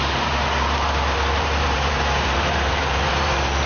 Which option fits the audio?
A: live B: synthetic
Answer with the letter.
B